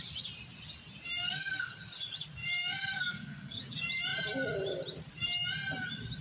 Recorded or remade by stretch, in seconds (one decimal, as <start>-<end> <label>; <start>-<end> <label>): 0.0-1.1 recorded; 1.1-1.7 remade; 1.7-2.6 recorded; 2.6-3.6 remade; 3.6-6.2 recorded